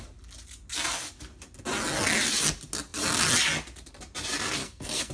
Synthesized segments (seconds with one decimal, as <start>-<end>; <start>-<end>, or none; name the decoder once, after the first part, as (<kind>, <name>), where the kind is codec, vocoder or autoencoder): 4.6-5.1 (codec, SNAC)